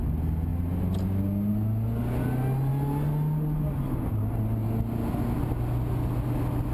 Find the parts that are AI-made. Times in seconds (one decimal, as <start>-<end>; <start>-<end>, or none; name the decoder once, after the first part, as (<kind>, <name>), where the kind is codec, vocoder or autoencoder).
none